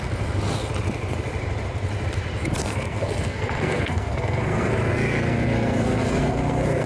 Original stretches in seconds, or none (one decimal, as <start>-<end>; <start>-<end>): 0.0-2.6